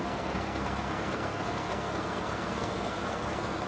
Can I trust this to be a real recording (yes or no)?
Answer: no